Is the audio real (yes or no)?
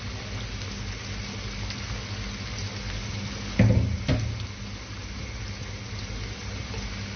yes